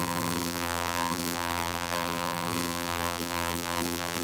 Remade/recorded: remade